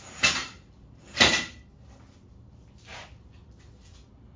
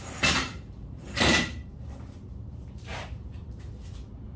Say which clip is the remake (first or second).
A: second